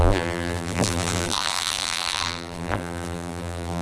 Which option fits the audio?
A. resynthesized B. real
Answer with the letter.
A